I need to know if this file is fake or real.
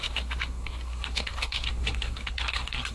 fake